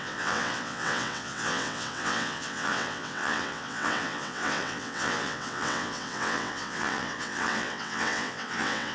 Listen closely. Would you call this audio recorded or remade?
remade